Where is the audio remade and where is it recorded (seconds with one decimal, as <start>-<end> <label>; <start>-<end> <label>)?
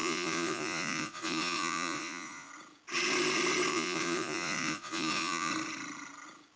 0.0-2.5 remade; 2.5-3.7 recorded; 3.7-5.5 remade; 5.5-6.6 recorded